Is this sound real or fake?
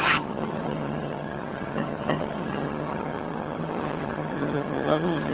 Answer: fake